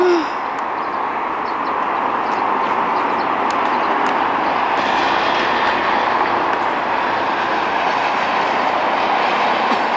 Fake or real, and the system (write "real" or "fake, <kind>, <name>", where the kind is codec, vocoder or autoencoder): real